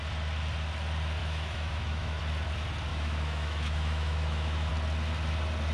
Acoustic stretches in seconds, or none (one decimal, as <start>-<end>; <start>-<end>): 0.0-1.2; 2.2-2.9; 4.7-5.7